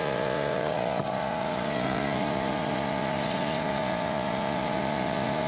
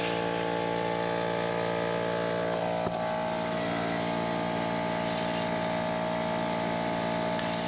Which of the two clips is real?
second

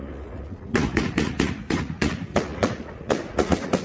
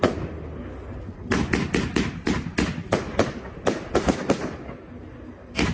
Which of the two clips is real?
second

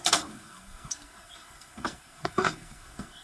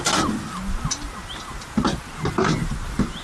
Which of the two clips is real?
second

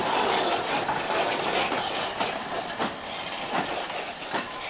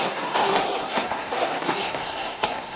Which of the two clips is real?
first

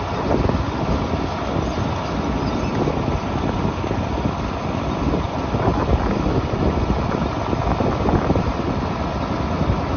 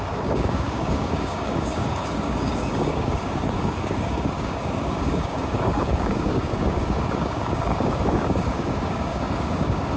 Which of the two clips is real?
first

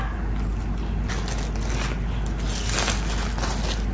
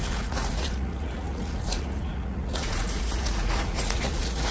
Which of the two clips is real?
first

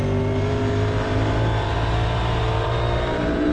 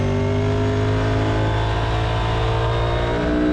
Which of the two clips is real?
second